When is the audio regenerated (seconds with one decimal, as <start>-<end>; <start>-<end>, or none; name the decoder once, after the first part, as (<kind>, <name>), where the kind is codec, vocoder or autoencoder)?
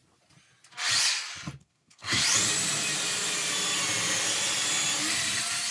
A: 1.6-2.2 (codec, SNAC)